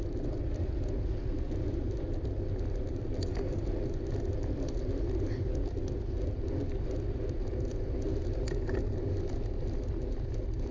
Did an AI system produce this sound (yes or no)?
no